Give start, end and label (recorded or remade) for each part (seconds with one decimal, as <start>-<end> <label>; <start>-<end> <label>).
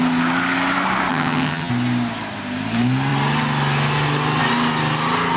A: 0.0-1.1 recorded; 1.1-1.7 remade; 1.7-5.4 recorded